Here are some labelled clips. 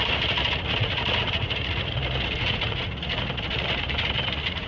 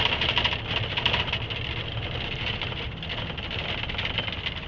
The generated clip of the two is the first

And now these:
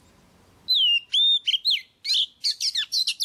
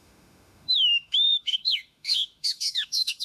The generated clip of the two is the second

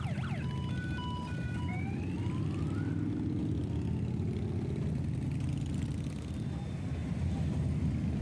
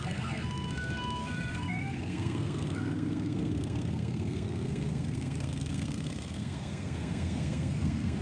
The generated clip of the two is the second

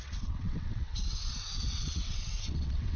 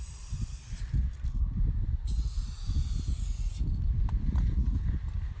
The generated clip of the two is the first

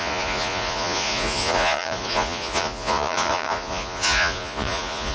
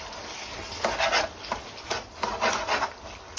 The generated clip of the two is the first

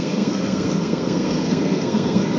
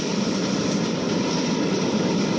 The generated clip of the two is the first